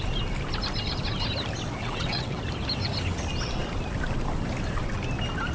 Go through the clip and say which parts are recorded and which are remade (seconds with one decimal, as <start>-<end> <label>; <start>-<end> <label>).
0.0-1.8 recorded; 1.8-2.4 remade; 2.4-5.5 recorded